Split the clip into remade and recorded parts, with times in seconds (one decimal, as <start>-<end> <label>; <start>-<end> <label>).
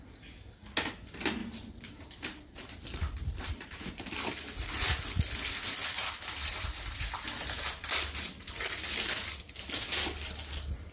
0.0-1.4 recorded; 1.4-4.3 remade; 4.3-10.9 recorded